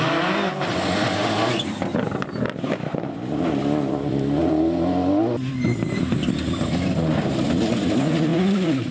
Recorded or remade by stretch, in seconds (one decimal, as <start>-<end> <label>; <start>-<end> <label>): 0.0-8.3 recorded; 8.3-8.9 remade